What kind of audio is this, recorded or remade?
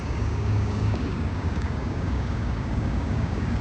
remade